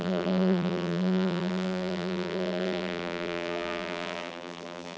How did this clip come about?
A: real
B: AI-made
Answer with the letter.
B